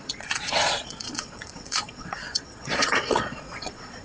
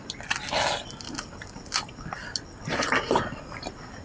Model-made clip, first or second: first